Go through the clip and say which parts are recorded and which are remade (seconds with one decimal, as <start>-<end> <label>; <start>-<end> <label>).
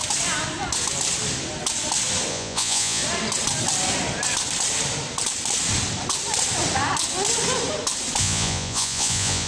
0.0-2.3 recorded; 2.3-3.0 remade; 3.0-8.2 recorded; 8.2-9.5 remade